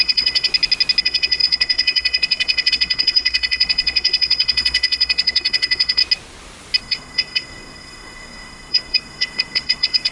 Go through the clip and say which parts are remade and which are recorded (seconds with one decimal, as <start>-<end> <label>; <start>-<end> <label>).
0.0-0.5 remade; 0.5-1.0 recorded; 1.0-6.0 remade; 6.0-6.8 recorded; 6.8-10.1 remade